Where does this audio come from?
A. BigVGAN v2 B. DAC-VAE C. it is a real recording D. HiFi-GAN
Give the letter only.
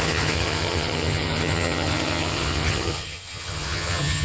D